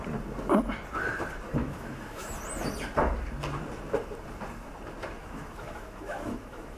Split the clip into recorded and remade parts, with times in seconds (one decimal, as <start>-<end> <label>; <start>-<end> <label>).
0.0-1.6 recorded; 1.6-2.3 remade; 2.3-5.2 recorded; 5.2-6.8 remade